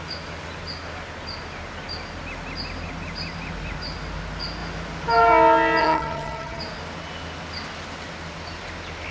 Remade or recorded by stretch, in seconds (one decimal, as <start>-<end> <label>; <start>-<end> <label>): 0.0-5.8 recorded; 5.8-6.6 remade; 6.6-9.1 recorded